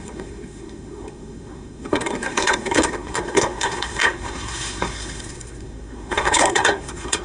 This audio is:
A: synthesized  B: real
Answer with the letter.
A